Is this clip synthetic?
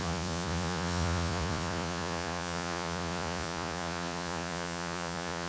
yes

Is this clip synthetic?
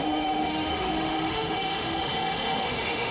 yes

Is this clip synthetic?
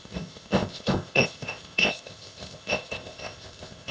yes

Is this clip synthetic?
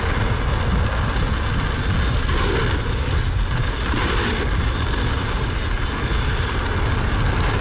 no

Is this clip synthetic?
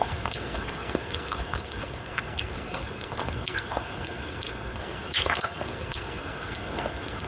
yes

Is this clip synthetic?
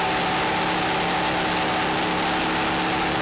no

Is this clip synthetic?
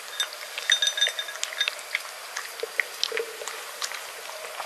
no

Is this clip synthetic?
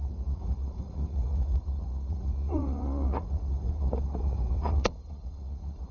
yes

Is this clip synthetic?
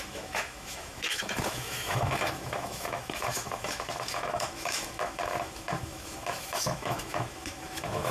yes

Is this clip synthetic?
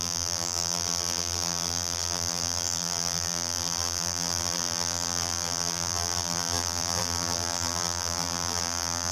yes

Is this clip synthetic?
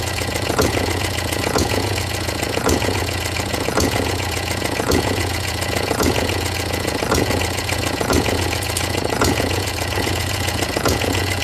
yes